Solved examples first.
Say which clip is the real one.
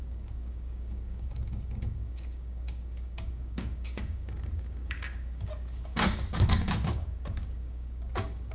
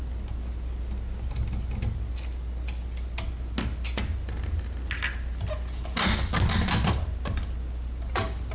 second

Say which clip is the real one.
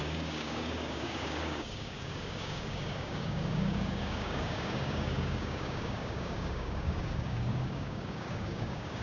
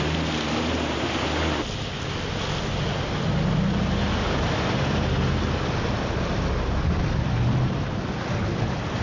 second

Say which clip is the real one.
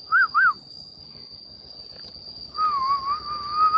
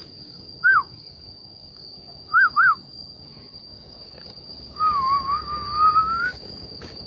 first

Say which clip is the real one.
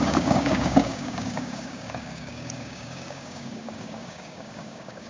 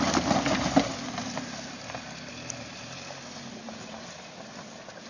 second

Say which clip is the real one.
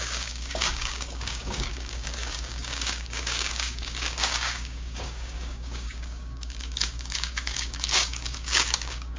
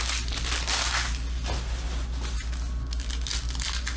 second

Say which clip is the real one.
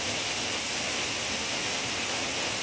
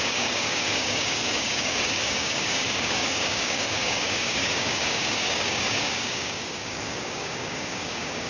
first